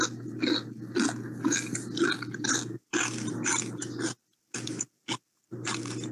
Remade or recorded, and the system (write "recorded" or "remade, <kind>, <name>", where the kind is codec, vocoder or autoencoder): recorded